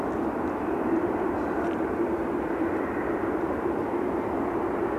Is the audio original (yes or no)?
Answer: no